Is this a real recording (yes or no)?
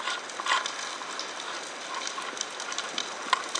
yes